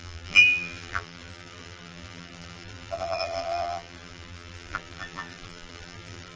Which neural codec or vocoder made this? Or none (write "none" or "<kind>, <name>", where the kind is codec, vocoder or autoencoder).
vocoder, BigVGAN v2